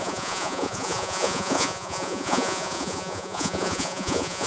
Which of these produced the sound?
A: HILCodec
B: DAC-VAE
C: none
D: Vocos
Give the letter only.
D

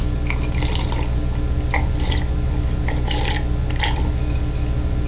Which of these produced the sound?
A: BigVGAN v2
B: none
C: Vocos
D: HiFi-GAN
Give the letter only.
B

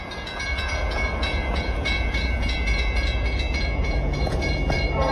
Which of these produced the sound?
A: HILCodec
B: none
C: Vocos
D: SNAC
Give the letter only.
C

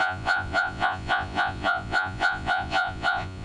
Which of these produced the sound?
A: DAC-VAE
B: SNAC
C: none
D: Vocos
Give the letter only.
D